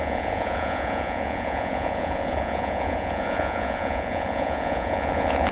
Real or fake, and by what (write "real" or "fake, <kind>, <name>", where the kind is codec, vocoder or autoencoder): fake, vocoder, Vocos